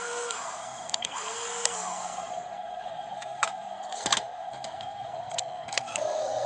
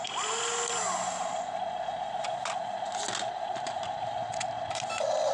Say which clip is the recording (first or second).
second